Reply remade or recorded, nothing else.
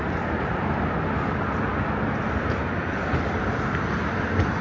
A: recorded